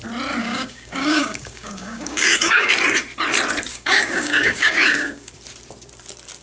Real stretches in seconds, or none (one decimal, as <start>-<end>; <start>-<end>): 0.0-0.4; 2.7-3.7; 5.3-6.4